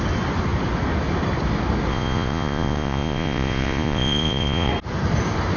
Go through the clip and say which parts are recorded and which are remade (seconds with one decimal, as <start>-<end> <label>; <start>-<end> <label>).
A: 0.0-1.9 recorded; 1.9-4.7 remade; 4.7-5.6 recorded